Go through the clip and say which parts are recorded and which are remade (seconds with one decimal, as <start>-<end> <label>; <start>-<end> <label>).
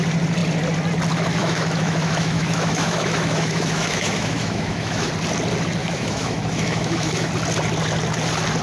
0.0-1.4 recorded; 1.4-5.1 remade; 5.1-5.8 recorded; 5.8-7.3 remade; 7.3-8.6 recorded